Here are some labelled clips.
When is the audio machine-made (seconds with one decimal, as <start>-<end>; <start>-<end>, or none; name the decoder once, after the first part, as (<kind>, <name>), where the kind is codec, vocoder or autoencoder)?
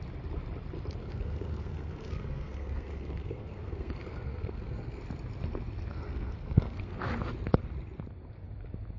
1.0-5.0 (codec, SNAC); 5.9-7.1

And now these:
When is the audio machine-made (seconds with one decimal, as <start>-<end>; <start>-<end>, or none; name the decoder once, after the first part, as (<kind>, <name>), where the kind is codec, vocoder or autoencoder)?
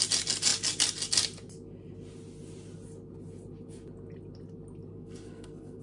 4.9-5.8 (codec, SNAC)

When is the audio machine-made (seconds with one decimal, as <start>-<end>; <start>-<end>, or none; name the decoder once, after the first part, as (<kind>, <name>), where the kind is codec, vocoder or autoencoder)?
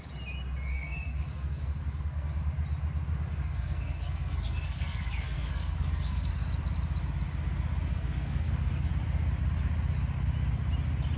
0.7-2.4 (codec, SNAC); 3.4-6.3; 7.9-8.9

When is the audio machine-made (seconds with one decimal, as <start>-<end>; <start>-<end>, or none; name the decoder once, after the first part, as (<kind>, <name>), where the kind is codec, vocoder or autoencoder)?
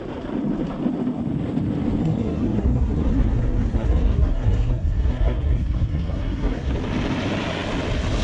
2.0-6.7 (codec, SNAC)